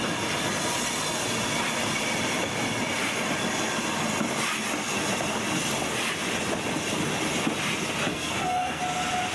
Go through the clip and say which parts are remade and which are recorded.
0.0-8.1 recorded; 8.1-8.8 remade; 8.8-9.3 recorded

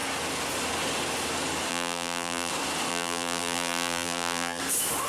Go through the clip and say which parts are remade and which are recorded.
0.0-1.7 recorded; 1.7-2.5 remade; 2.5-2.9 recorded; 2.9-4.6 remade; 4.6-5.1 recorded

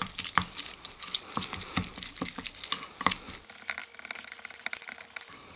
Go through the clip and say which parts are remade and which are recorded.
0.0-2.3 remade; 2.3-5.6 recorded

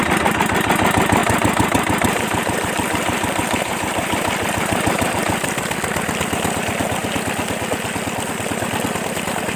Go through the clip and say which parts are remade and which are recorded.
0.0-1.2 recorded; 1.2-5.1 remade; 5.1-9.6 recorded